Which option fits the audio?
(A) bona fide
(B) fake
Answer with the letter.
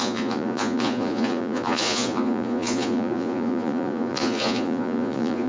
B